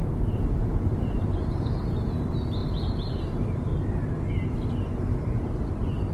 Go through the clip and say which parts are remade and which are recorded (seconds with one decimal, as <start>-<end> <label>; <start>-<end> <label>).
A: 0.0-3.7 remade; 3.7-5.0 recorded; 5.0-6.1 remade

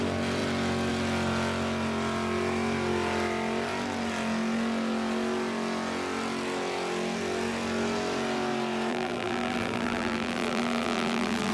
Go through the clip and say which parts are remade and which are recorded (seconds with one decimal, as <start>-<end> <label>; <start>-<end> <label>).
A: 0.0-8.9 recorded; 8.9-11.5 remade

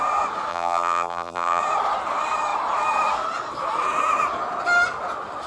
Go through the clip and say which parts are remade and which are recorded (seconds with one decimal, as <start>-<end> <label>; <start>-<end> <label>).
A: 0.0-0.5 recorded; 0.5-1.6 remade; 1.6-5.5 recorded

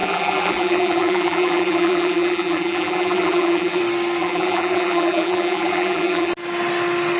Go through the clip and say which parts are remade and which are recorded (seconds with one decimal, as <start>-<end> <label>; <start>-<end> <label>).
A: 0.0-3.8 remade; 3.8-4.2 recorded; 4.2-6.3 remade; 6.3-7.2 recorded

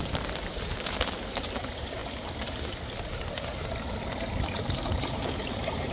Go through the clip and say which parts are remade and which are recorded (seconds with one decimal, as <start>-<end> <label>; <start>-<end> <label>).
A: 0.0-2.0 remade; 2.0-5.5 recorded; 5.5-5.9 remade

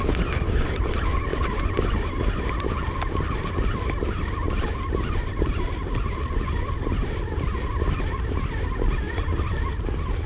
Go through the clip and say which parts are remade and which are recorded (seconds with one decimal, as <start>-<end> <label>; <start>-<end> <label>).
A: 0.0-1.3 recorded; 1.3-2.2 remade; 2.2-10.3 recorded

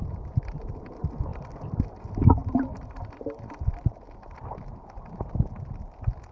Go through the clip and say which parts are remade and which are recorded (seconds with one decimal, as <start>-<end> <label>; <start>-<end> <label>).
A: 0.0-1.3 recorded; 1.3-1.8 remade; 1.8-2.4 recorded; 2.4-5.8 remade; 5.8-6.3 recorded

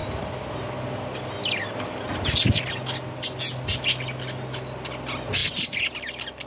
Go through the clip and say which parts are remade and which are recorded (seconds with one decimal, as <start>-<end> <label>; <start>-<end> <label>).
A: 0.0-6.5 recorded